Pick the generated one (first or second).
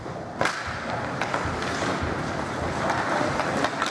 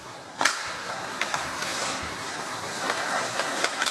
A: second